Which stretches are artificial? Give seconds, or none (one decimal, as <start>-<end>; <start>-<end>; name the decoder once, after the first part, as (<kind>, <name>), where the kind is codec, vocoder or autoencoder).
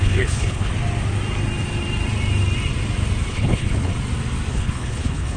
0.0-0.7 (codec, HILCodec); 3.3-3.9; 4.5-5.4